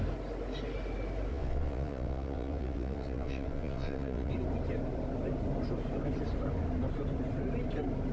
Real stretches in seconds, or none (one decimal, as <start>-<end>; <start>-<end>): 0.0-1.3; 4.3-8.1